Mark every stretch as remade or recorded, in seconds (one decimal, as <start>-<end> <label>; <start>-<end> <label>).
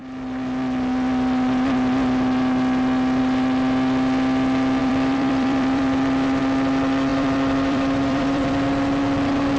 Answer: 0.0-4.8 recorded; 4.8-6.4 remade; 6.4-7.1 recorded; 7.1-8.5 remade; 8.5-9.6 recorded